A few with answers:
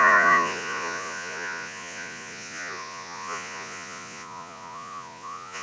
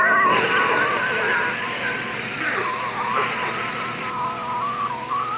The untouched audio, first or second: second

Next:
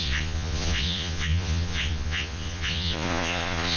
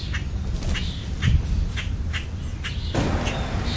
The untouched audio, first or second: second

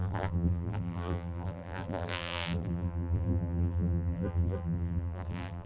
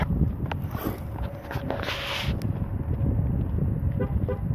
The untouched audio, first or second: second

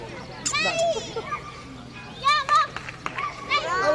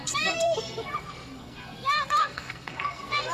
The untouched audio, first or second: first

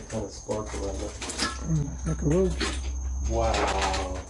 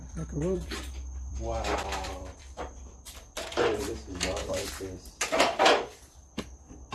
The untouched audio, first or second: first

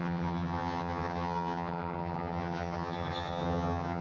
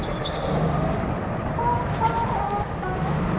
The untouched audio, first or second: second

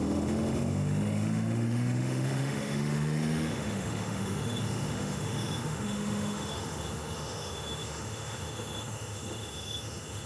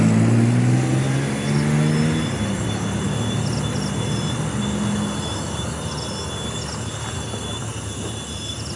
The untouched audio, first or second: second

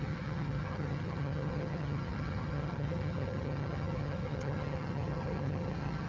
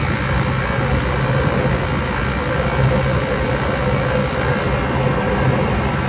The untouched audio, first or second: second